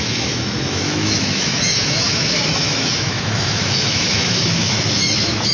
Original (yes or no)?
no